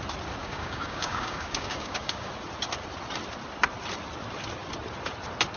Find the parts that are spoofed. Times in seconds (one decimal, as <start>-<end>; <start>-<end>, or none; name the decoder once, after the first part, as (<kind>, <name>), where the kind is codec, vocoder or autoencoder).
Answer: 0.4-2.3 (codec, DAC)